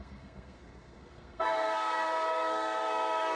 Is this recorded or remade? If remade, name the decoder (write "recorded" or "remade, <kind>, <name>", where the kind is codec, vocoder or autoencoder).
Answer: remade, codec, SNAC